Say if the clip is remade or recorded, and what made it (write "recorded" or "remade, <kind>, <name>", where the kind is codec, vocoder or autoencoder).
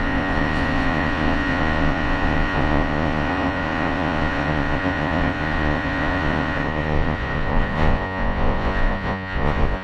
remade, vocoder, Vocos